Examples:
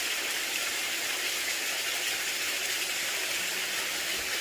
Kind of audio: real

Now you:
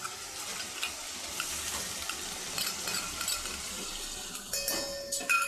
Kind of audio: real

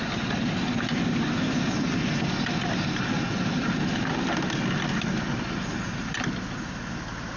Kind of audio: real